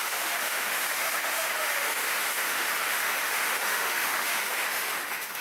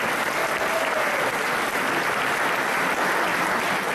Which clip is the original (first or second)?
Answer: second